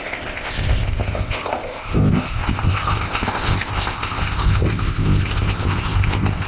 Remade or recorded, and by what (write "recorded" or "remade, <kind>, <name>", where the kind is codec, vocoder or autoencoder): remade, codec, ZipCodec